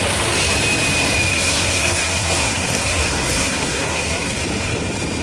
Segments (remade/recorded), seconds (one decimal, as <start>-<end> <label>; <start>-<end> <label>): 0.0-1.3 recorded; 1.3-4.4 remade; 4.4-5.2 recorded